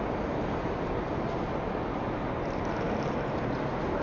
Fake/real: real